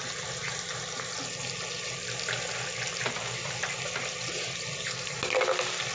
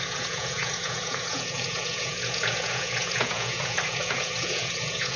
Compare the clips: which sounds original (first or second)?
first